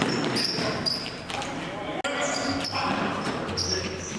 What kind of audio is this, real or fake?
real